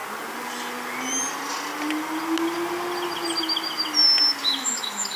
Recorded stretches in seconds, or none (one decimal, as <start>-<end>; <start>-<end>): 0.0-4.4